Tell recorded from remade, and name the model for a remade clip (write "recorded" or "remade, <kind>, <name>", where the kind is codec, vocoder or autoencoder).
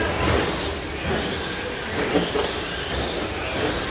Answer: recorded